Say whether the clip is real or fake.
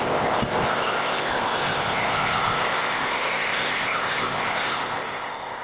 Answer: fake